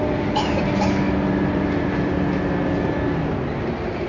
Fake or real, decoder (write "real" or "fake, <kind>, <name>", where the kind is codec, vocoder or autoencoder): real